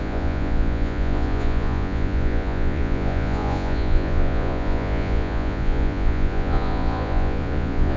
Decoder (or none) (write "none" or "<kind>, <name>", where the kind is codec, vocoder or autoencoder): vocoder, Vocos